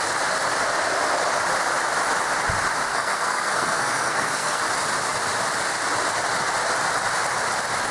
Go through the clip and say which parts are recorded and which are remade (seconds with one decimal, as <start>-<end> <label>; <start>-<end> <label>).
0.0-2.9 recorded; 2.9-4.6 remade; 4.6-7.9 recorded